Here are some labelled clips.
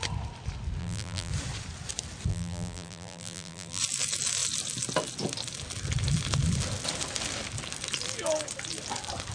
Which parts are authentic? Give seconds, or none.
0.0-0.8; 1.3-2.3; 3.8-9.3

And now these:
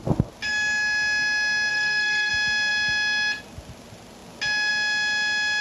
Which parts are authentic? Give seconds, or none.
0.0-1.7; 2.3-5.6